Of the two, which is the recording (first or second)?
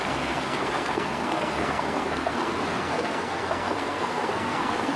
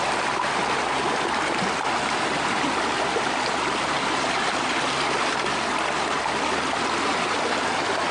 second